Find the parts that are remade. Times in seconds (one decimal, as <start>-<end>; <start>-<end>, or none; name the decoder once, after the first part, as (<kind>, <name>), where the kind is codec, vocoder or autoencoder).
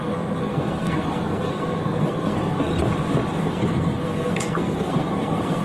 0.0-2.7 (codec, SNAC); 3.4-5.6